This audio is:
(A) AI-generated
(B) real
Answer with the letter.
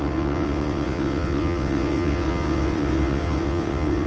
A